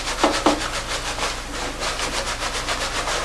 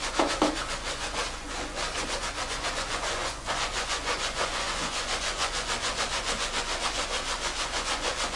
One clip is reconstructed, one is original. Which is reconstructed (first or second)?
second